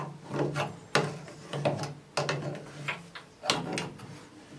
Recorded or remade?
recorded